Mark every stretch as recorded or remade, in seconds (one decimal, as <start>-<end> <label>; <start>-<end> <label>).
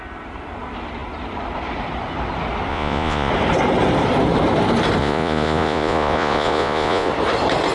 0.0-2.7 recorded; 2.7-3.3 remade; 3.3-5.0 recorded; 5.0-7.1 remade; 7.1-7.7 recorded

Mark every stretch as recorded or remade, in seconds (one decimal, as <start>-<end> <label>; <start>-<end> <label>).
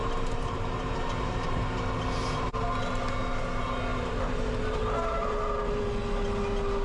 0.0-1.9 remade; 1.9-3.9 recorded; 3.9-5.8 remade; 5.8-6.8 recorded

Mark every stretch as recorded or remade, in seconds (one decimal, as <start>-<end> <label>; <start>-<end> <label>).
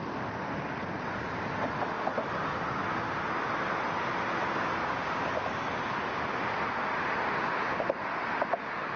0.0-4.8 recorded; 4.8-5.4 remade; 5.4-9.0 recorded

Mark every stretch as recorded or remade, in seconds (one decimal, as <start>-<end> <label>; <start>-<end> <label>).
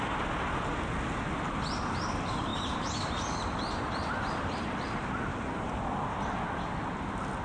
0.0-2.5 recorded; 2.5-6.2 remade; 6.2-7.4 recorded